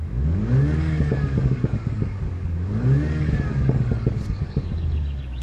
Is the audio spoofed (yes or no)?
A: yes